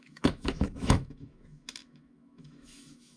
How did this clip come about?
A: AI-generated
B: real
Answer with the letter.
A